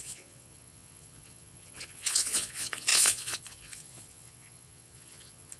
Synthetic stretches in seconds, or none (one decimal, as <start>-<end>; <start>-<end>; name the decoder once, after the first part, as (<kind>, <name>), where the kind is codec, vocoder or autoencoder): 0.0-5.6 (vocoder, Vocos)

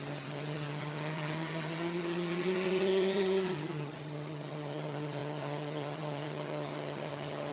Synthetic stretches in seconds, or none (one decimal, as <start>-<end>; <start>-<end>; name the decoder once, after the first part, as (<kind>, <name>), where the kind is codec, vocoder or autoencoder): 0.0-7.5 (vocoder, HiFi-GAN)

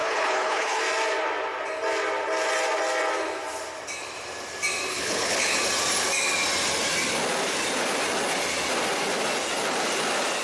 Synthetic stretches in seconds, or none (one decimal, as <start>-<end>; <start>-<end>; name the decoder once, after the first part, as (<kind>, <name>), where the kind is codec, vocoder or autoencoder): 0.0-0.8 (codec, HILCodec); 4.9-5.6